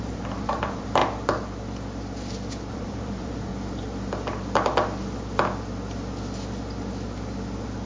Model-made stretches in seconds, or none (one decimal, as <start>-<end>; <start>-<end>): 0.0-1.0; 2.7-3.5